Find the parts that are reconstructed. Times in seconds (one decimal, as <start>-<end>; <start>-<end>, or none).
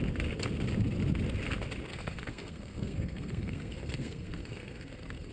1.9-5.3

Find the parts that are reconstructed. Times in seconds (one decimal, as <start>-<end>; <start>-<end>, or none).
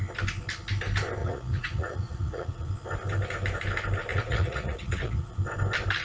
1.2-2.7; 4.1-5.4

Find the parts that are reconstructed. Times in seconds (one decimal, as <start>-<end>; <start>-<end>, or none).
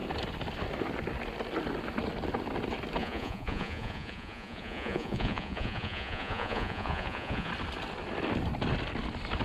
3.0-7.5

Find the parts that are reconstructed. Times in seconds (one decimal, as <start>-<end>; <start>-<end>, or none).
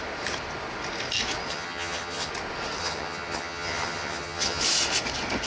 1.5-2.3; 2.8-4.6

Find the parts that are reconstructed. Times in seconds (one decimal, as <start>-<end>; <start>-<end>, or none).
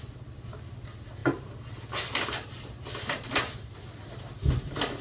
none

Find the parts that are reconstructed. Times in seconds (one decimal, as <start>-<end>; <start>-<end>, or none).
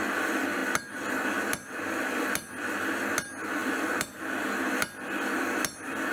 3.6-4.4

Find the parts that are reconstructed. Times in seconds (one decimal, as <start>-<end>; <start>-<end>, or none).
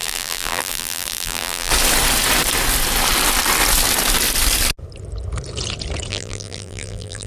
0.0-1.7; 6.1-7.3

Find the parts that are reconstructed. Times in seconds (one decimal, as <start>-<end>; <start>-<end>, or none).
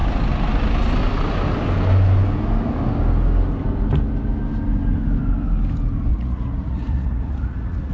6.1-7.9